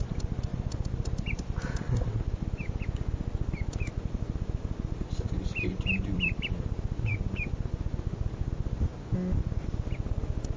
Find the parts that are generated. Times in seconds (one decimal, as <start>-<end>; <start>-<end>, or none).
0.0-0.5; 1.7-7.1; 10.1-10.6